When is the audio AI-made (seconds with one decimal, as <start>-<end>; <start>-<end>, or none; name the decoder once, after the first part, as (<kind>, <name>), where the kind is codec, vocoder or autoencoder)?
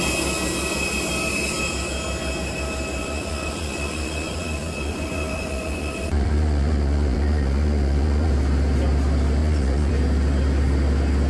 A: 3.0-8.3 (vocoder, Vocos); 9.4-9.9